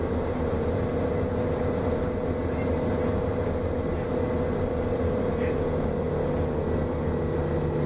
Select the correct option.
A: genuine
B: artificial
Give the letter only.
A